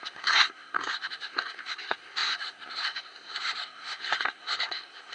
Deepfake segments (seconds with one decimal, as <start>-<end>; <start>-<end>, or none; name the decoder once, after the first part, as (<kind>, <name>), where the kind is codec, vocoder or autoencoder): 0.0-5.1 (codec, SNAC)